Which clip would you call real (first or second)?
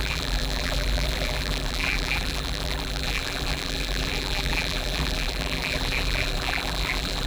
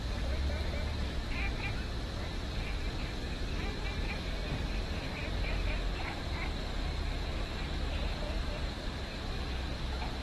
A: second